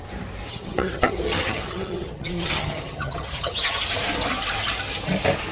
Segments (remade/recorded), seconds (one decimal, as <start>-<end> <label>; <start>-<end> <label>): 0.0-0.5 recorded; 0.5-3.8 remade; 3.8-5.5 recorded